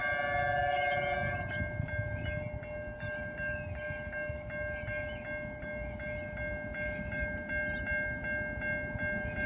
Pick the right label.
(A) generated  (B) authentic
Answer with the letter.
B